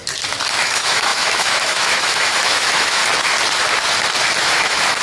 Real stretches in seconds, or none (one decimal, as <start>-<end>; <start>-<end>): 0.0-0.6; 3.0-4.4